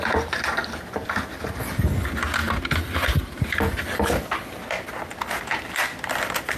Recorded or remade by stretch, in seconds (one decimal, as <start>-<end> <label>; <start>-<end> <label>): 0.0-0.6 recorded; 0.6-1.4 remade; 1.4-6.6 recorded